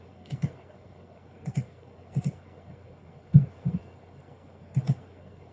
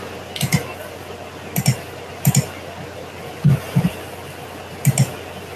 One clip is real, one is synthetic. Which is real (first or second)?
second